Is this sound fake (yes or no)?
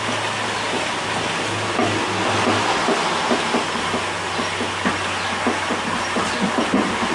no